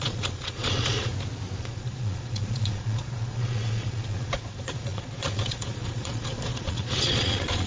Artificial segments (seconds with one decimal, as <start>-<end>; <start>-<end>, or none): 0.0-1.1; 1.6-7.7